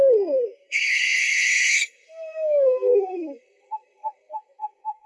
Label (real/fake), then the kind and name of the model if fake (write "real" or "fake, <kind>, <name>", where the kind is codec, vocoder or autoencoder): fake, codec, SNAC